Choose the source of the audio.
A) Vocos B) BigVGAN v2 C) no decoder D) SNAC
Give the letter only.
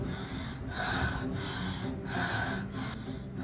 C